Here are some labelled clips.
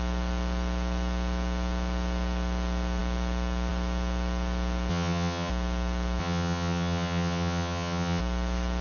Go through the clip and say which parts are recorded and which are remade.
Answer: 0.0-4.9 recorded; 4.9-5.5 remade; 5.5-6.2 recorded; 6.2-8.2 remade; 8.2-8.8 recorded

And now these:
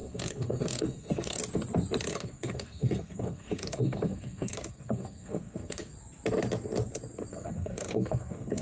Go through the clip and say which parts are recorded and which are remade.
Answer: 0.0-1.4 remade; 1.4-2.1 recorded; 2.1-5.9 remade; 5.9-7.3 recorded; 7.3-8.6 remade

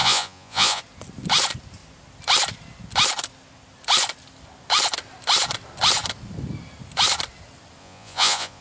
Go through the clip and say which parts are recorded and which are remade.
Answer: 0.0-0.8 remade; 0.8-7.8 recorded; 7.8-8.6 remade

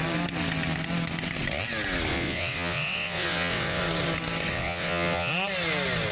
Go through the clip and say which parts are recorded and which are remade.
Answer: 0.0-2.1 recorded; 2.1-3.8 remade; 3.8-4.5 recorded; 4.5-5.3 remade; 5.3-6.1 recorded

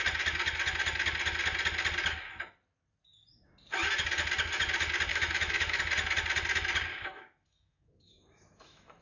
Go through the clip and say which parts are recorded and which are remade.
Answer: 0.0-5.1 recorded; 5.1-5.8 remade; 5.8-6.9 recorded; 6.9-9.0 remade

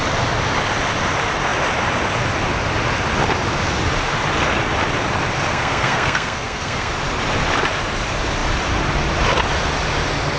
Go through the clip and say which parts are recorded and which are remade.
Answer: 0.0-5.5 recorded; 5.5-6.9 remade; 6.9-10.4 recorded